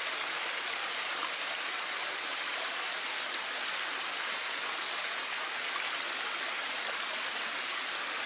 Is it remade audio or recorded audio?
recorded